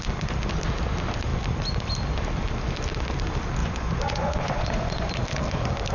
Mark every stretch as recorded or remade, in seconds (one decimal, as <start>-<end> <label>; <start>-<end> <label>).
0.0-3.6 recorded; 3.6-5.1 remade; 5.1-5.9 recorded